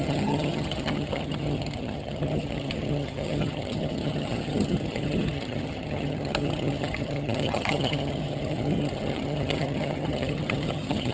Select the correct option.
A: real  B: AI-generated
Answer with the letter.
B